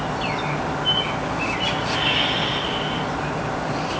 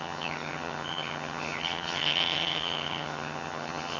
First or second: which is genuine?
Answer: first